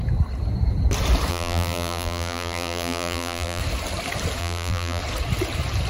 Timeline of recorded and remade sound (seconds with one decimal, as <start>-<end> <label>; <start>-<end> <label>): 0.0-1.3 recorded; 1.3-3.6 remade; 3.6-4.4 recorded; 4.4-5.0 remade; 5.0-5.9 recorded